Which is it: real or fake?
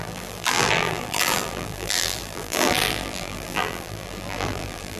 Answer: fake